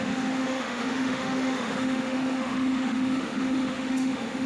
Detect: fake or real fake